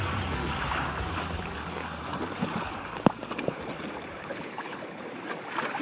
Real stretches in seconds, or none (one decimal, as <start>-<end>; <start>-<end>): 0.0-4.1; 5.0-5.8